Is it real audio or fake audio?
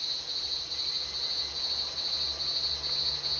real